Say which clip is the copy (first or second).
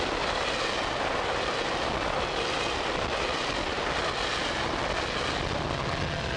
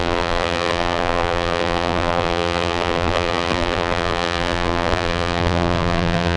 second